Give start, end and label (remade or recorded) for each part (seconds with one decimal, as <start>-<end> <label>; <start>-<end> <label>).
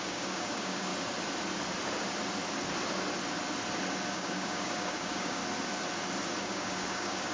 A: 0.0-0.9 remade; 0.9-4.1 recorded; 4.1-5.4 remade; 5.4-6.4 recorded; 6.4-7.3 remade